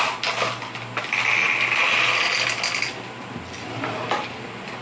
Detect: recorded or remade recorded